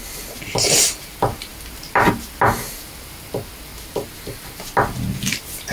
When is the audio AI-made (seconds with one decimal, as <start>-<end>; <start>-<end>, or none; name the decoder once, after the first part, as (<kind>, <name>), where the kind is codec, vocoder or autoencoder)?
none